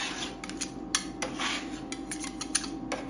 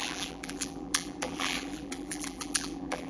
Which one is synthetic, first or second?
second